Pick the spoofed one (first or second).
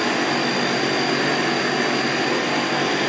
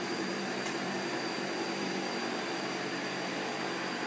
second